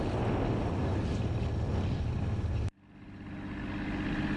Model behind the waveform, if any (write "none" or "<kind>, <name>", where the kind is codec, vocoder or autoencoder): none